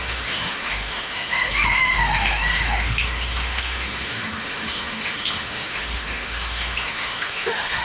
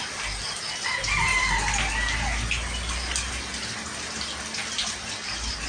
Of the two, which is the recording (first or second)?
second